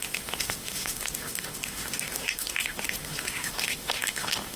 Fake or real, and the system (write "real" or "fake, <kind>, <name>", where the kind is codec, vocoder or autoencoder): fake, autoencoder, DAC-VAE